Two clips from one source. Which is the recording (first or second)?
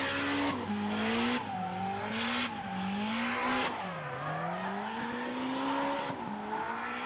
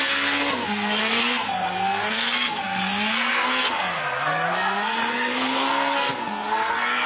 first